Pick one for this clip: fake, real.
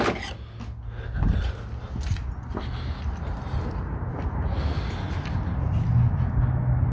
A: real